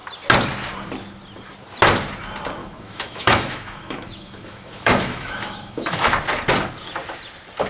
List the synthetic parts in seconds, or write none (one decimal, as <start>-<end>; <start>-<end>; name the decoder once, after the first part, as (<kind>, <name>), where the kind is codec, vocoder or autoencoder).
2.6-6.1 (autoencoder, DAC-VAE)